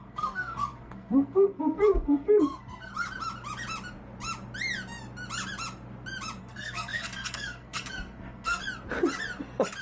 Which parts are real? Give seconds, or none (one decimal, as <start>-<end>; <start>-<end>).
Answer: 2.9-6.4; 8.6-9.8